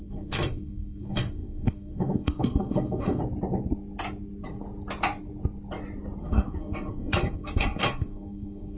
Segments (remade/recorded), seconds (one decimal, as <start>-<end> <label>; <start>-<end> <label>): 0.0-3.2 remade; 3.2-6.2 recorded; 6.2-8.8 remade